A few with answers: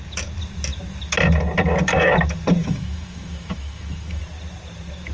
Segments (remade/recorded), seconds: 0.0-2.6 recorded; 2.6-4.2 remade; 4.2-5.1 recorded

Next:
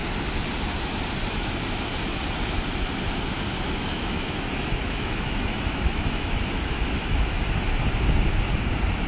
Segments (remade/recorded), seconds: 0.0-3.8 recorded; 3.8-7.4 remade; 7.4-9.1 recorded

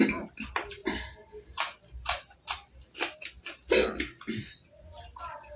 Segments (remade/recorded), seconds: 0.0-5.6 recorded

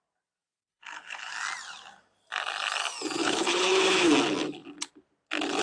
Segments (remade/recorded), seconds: 0.0-0.7 recorded; 0.7-1.3 remade; 1.3-3.2 recorded; 3.2-4.1 remade; 4.1-5.6 recorded

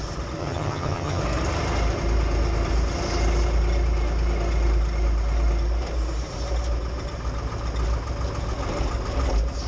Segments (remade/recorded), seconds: 0.0-0.4 recorded; 0.4-1.2 remade; 1.2-9.7 recorded

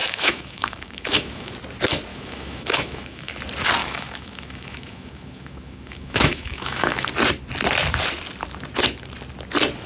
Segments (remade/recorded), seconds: 0.0-1.5 remade; 1.5-2.1 recorded; 2.1-3.3 remade; 3.3-3.8 recorded; 3.8-7.1 remade; 7.1-9.9 recorded

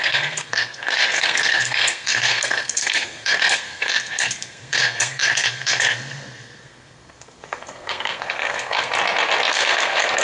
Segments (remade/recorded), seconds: 0.0-8.9 remade; 8.9-9.5 recorded; 9.5-10.2 remade

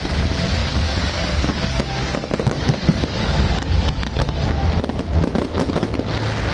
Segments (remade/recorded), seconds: 0.0-0.6 recorded; 0.6-4.5 remade; 4.5-6.5 recorded